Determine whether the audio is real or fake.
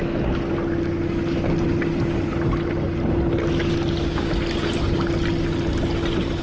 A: real